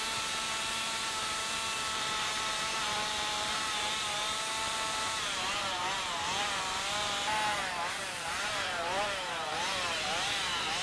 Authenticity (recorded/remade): remade